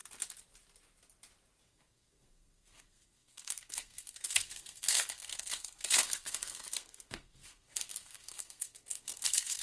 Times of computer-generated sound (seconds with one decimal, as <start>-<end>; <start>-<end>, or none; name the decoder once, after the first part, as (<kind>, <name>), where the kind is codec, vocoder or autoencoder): 1.7-9.6 (codec, SNAC)